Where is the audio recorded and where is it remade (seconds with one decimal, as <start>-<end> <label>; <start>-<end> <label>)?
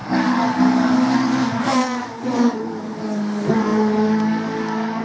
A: 0.0-5.0 remade